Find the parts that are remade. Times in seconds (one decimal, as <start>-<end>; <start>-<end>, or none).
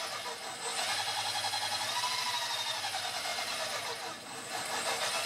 3.3-4.6